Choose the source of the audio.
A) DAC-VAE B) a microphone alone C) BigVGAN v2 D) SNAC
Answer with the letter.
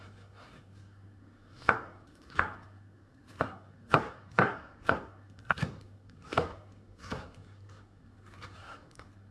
D